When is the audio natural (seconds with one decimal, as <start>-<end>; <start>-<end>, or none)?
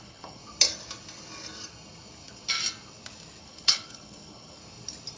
0.4-3.4; 4.6-5.2